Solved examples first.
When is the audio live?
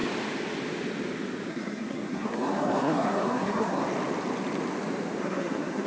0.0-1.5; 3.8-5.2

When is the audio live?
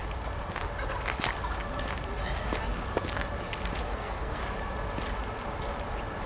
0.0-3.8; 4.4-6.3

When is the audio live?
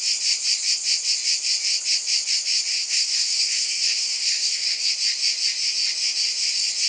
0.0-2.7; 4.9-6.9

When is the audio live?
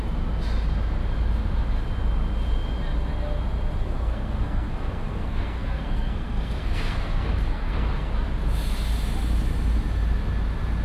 0.0-3.8; 8.1-10.8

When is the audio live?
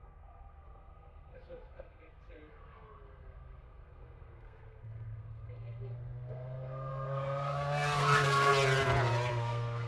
8.5-9.3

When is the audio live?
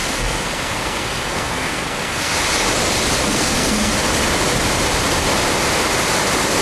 2.3-3.2; 3.9-6.6